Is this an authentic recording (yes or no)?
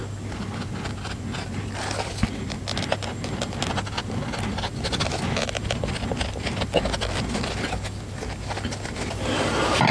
yes